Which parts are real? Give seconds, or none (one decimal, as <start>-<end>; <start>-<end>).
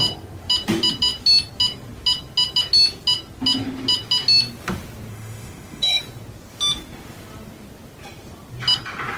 0.0-5.1; 6.0-9.2